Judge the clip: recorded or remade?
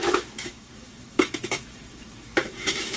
remade